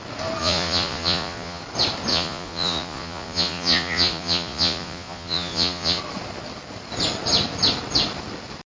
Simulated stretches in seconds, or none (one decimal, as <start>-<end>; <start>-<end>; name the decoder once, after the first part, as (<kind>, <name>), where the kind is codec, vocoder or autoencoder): 0.4-1.6 (vocoder, Vocos); 2.1-6.0